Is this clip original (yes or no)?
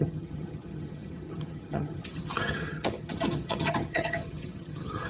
no